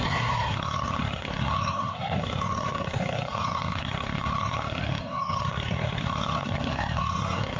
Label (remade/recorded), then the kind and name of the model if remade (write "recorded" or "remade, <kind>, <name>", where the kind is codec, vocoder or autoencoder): remade, codec, SNAC